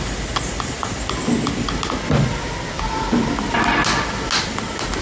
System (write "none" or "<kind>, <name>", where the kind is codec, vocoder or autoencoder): none